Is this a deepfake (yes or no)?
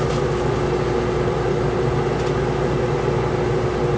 no